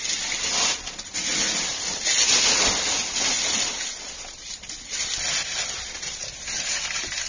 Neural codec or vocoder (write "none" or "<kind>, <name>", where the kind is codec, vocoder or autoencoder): none